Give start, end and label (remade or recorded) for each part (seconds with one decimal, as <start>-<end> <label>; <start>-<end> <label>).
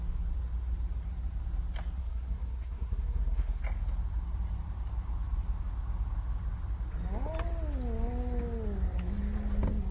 0.0-2.0 recorded; 2.0-3.6 remade; 3.6-9.9 recorded